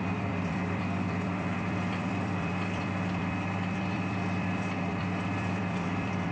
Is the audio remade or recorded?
remade